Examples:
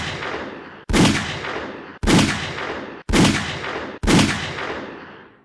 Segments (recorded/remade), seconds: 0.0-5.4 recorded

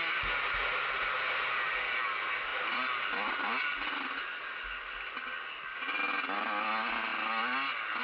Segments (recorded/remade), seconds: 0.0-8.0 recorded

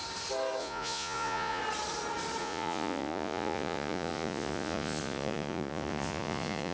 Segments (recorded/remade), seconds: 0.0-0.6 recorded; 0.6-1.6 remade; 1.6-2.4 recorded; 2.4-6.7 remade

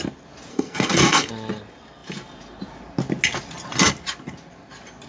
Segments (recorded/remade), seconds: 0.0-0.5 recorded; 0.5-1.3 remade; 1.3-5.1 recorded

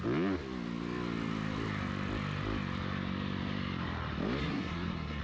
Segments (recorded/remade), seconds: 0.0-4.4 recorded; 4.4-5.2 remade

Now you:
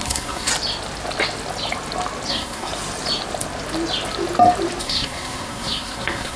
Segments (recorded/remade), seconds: 0.0-0.5 remade; 0.5-2.3 recorded; 2.3-2.7 remade; 2.7-4.8 recorded; 4.8-6.4 remade

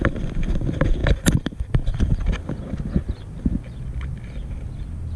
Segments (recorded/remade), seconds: 0.0-5.2 recorded

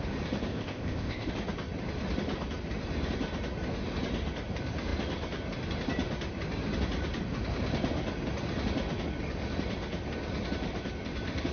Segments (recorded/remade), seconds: 0.0-0.5 recorded; 0.5-1.3 remade; 1.3-11.5 recorded